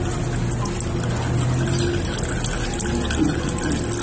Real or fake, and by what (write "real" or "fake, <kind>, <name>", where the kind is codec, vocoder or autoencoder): real